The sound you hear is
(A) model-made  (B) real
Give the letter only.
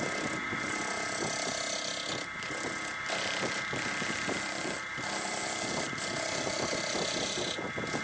B